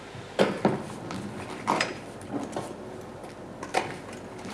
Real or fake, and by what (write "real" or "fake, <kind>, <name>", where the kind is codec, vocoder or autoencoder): real